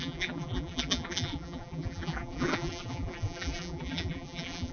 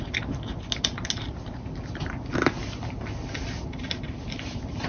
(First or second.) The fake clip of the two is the first